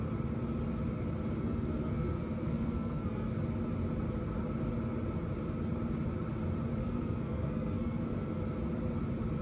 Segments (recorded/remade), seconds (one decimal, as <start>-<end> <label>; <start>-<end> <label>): 0.0-1.4 recorded; 1.4-3.3 remade; 3.3-6.8 recorded; 6.8-8.4 remade; 8.4-9.4 recorded